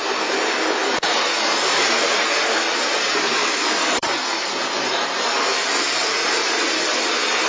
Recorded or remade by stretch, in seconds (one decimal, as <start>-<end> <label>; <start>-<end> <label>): 0.0-0.8 recorded; 0.8-4.5 remade; 4.5-6.2 recorded; 6.2-6.7 remade; 6.7-7.5 recorded